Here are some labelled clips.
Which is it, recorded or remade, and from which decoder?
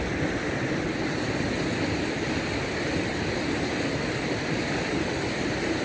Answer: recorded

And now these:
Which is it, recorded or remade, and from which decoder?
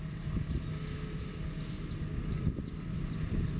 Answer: recorded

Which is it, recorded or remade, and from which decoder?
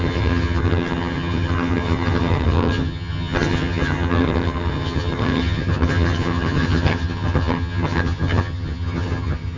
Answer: remade, vocoder, HiFi-GAN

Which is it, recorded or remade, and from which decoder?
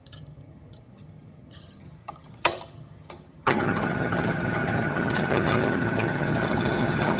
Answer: remade, vocoder, HiFi-GAN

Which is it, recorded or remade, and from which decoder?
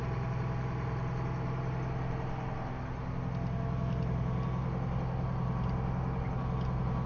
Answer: recorded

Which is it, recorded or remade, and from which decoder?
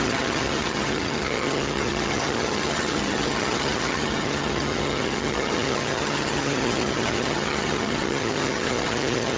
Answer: remade, vocoder, HiFi-GAN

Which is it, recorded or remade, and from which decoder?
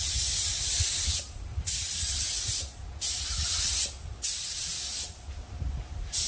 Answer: recorded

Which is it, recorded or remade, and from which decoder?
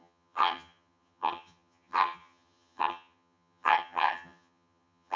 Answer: remade, vocoder, HiFi-GAN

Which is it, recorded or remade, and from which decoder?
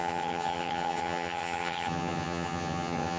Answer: remade, vocoder, HiFi-GAN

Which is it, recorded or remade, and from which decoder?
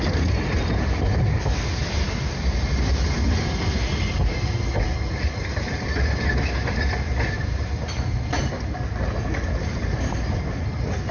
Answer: recorded